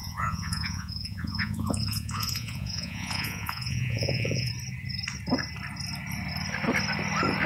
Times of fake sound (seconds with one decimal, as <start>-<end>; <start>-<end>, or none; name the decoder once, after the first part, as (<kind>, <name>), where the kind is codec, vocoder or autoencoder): 0.0-4.5 (vocoder, Vocos)